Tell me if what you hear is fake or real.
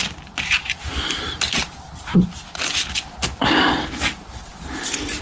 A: real